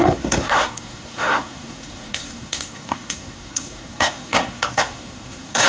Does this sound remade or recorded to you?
remade